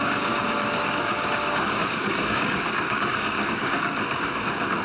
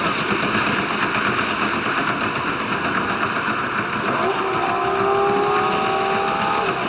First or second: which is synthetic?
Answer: first